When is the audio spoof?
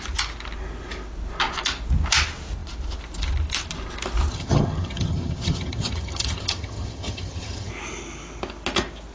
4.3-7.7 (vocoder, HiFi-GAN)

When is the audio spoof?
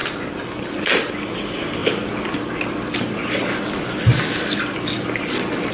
none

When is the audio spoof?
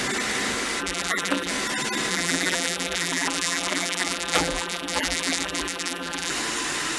0.8-1.5 (vocoder, BigVGAN v2); 2.1-6.3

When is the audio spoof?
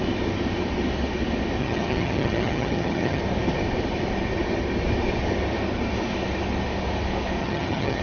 1.6-3.2 (vocoder, HiFi-GAN); 7.4-8.0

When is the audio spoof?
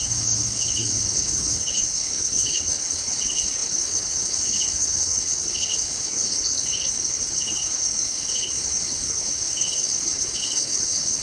0.0-11.2 (codec, HILCodec)